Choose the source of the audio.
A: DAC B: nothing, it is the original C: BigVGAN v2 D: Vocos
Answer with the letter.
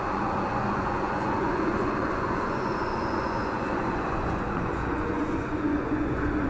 D